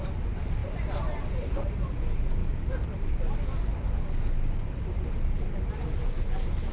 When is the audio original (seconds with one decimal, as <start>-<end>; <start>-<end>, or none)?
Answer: 0.0-6.7